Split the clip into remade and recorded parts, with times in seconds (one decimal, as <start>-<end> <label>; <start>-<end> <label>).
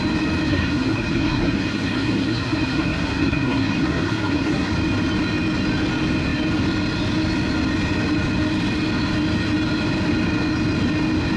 0.0-0.5 recorded; 0.5-4.7 remade; 4.7-11.4 recorded